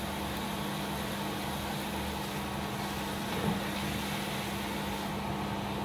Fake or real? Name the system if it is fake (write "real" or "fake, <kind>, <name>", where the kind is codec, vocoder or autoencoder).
real